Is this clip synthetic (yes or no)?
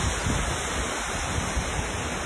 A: no